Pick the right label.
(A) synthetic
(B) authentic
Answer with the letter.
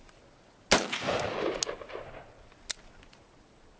B